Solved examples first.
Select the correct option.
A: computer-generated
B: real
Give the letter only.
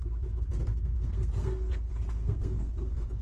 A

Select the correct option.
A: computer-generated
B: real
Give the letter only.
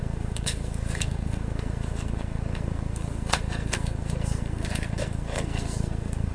A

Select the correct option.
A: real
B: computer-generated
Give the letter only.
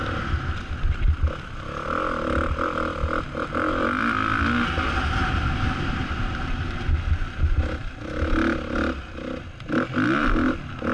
A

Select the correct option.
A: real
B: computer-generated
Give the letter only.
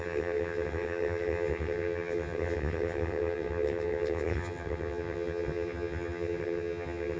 B